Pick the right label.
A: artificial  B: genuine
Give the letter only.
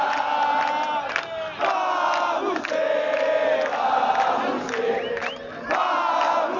B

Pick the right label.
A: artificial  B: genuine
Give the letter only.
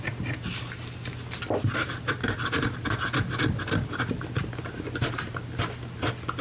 B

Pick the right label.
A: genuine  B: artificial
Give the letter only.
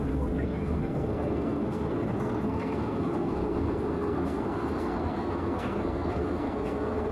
B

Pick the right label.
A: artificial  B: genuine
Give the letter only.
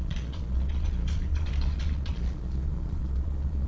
A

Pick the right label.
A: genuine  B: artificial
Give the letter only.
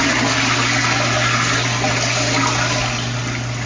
A